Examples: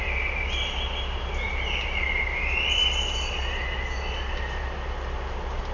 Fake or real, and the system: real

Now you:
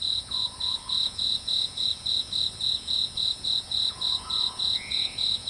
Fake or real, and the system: fake, vocoder, Vocos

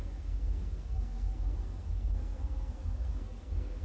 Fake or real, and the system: fake, codec, SNAC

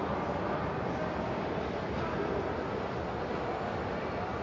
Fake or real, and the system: real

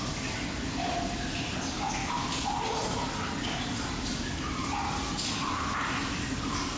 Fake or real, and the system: real